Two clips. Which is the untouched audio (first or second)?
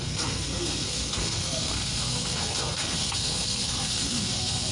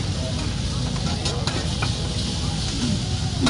second